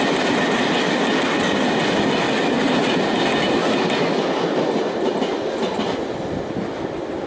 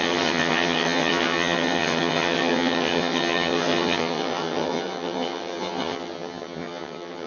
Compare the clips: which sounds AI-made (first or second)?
second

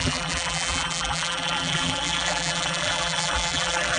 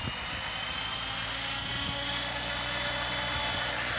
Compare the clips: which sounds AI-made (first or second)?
first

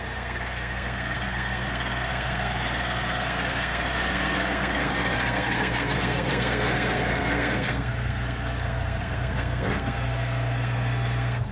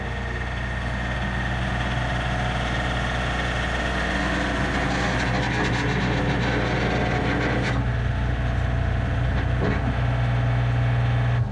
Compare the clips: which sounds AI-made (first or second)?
first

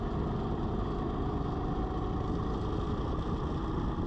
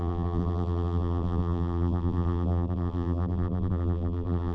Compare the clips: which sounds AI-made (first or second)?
second